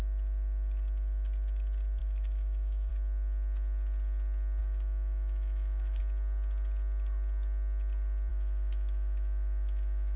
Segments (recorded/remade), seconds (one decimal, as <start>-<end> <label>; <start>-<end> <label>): 0.0-2.0 recorded; 2.0-2.9 remade; 2.9-4.6 recorded; 4.6-6.0 remade; 6.0-8.3 recorded; 8.3-10.2 remade